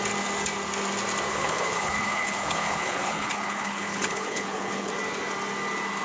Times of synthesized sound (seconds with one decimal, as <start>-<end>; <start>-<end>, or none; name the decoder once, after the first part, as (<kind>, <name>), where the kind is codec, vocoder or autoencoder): 1.3-4.9 (codec, HILCodec)